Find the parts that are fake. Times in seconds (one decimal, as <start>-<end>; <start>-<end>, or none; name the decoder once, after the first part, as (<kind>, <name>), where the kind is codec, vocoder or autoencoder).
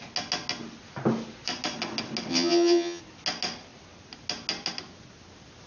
2.3-3.0 (vocoder, HiFi-GAN)